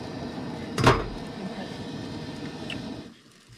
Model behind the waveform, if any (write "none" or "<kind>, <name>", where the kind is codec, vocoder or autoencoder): none